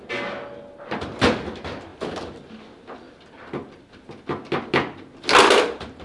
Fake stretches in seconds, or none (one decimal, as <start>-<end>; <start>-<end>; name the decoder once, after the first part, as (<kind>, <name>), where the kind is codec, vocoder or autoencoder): none

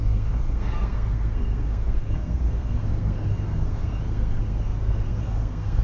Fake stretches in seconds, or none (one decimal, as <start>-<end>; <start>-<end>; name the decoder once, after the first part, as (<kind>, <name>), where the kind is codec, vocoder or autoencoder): 0.0-5.8 (codec, SNAC)

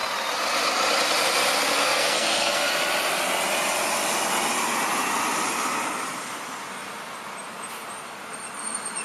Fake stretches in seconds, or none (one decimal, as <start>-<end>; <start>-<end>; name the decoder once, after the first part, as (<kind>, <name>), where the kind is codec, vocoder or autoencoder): 1.8-2.7 (codec, SNAC)

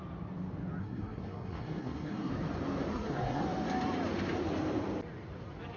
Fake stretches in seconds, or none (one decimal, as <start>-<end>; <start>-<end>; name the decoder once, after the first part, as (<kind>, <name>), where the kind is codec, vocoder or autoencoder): 0.8-2.3 (codec, SNAC); 2.9-3.4

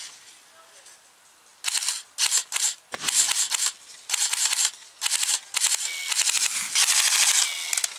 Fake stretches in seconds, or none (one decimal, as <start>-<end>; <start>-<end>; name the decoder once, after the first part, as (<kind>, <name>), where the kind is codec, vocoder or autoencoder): none

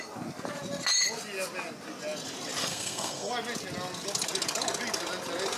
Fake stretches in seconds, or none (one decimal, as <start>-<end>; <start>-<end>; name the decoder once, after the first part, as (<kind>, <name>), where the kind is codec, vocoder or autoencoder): 2.6-3.3 (codec, SNAC)

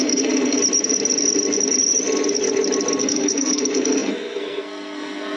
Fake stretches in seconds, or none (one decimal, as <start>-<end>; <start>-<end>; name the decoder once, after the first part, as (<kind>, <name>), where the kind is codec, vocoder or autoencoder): 0.0-0.6 (codec, SNAC); 3.0-5.4